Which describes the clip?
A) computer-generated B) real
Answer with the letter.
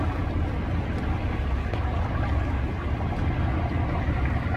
B